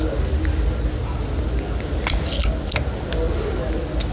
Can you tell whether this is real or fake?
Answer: real